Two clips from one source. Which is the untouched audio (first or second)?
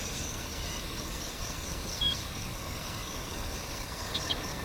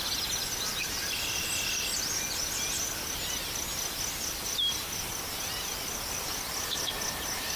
second